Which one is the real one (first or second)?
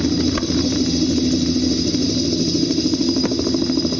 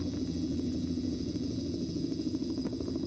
first